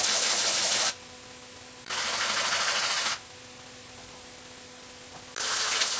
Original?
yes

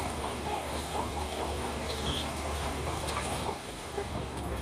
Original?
no